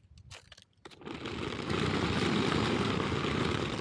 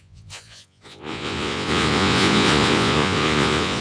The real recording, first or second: first